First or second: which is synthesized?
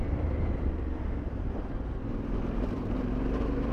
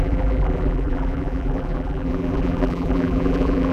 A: second